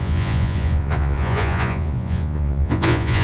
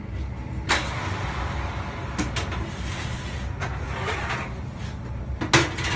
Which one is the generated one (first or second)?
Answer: first